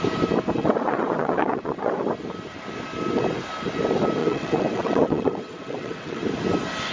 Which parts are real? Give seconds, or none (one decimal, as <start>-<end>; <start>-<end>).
0.0-0.6; 1.9-4.2; 6.2-6.9